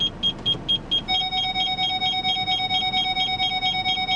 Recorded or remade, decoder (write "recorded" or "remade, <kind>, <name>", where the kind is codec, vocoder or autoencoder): recorded